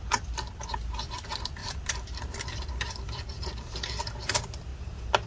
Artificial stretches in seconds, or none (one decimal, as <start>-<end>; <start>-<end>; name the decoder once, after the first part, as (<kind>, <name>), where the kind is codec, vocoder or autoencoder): 1.6-4.0 (vocoder, BigVGAN v2); 4.7-5.3